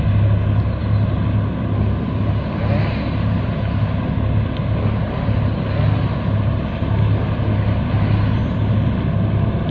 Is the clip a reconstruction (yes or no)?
no